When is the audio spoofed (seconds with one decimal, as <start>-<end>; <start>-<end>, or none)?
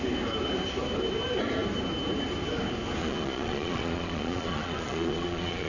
3.0-5.7